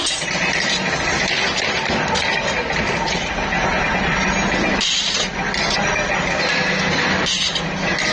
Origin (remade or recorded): recorded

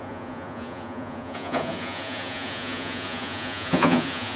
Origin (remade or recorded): remade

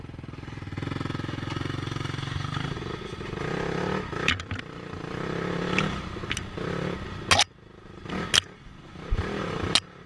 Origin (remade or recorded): recorded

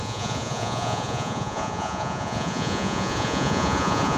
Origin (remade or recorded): remade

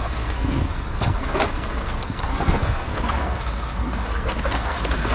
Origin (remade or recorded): remade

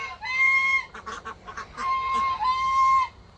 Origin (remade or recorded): remade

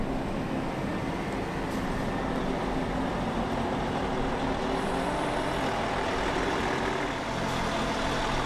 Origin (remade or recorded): recorded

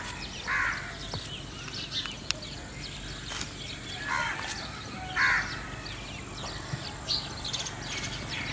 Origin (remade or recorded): recorded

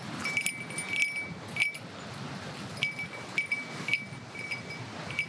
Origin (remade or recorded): recorded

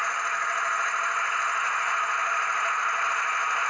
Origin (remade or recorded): recorded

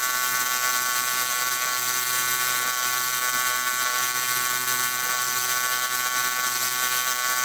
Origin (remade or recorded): remade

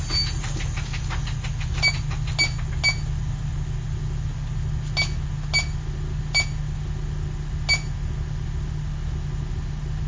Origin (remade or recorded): recorded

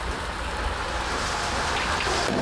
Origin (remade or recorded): recorded